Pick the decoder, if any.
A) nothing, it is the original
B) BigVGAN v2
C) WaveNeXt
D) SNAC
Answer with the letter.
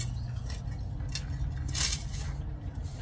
A